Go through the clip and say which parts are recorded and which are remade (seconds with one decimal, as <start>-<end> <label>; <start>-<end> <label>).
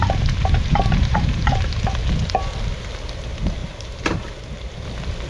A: 0.0-1.8 remade; 1.8-3.6 recorded; 3.6-4.4 remade; 4.4-5.3 recorded